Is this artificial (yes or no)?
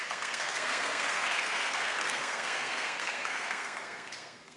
yes